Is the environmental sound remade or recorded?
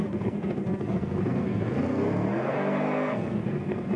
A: remade